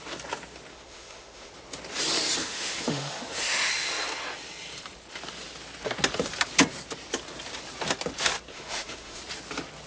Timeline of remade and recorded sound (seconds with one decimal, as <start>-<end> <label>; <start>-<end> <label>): 0.0-0.7 recorded; 0.7-1.5 remade; 1.5-2.4 recorded; 2.4-3.7 remade; 3.7-8.5 recorded; 8.5-9.2 remade; 9.2-9.9 recorded